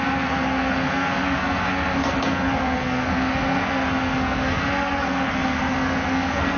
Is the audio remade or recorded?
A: remade